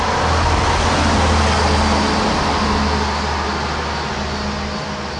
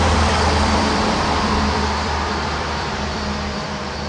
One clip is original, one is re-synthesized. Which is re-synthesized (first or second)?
second